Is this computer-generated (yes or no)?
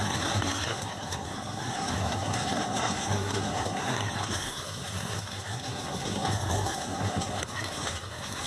yes